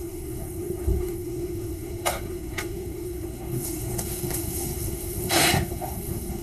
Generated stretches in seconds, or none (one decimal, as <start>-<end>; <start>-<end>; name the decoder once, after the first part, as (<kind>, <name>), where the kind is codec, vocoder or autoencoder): 0.0-6.4 (codec, SNAC)